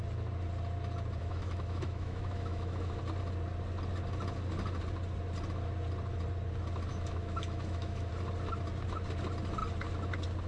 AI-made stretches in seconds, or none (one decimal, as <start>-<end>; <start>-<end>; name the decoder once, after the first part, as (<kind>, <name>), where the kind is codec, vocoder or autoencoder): 1.2-3.0 (autoencoder, DAC-VAE); 6.9-8.1